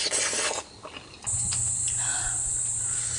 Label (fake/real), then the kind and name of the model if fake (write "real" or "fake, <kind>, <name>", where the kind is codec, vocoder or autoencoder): real